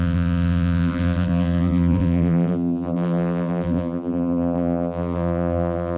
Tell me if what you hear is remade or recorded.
remade